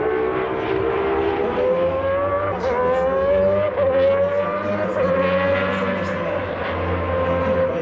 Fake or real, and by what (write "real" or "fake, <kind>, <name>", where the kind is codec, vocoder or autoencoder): real